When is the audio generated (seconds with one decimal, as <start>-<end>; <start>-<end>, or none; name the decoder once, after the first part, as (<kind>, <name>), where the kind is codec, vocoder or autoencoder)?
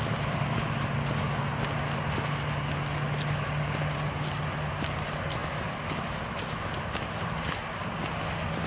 none